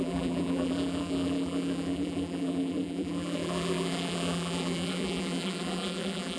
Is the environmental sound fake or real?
fake